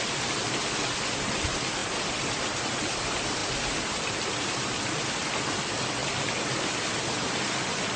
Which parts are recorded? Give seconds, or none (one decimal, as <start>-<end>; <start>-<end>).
0.0-8.0